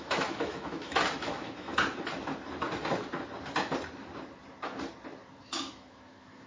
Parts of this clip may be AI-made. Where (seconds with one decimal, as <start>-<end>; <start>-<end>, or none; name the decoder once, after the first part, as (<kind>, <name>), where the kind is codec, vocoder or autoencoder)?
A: 0.0-1.7 (autoencoder, DAC-VAE); 5.4-6.5